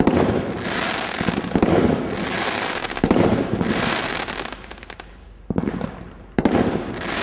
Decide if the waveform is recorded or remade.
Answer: recorded